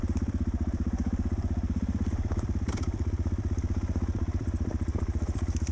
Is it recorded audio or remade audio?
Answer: remade